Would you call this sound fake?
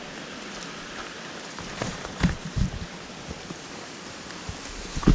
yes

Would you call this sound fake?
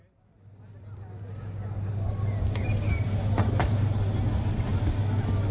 no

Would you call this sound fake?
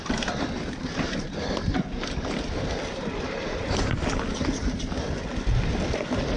no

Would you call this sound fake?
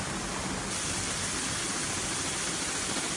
no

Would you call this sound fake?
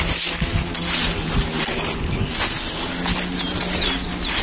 no